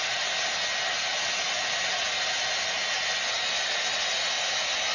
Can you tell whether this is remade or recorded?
recorded